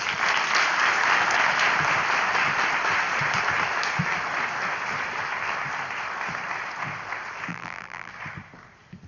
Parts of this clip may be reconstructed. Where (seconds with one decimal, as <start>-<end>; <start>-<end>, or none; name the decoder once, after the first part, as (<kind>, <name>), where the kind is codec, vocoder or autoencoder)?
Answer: 7.5-8.1 (vocoder, BigVGAN v2)